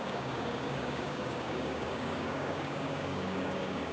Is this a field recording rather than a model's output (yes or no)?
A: no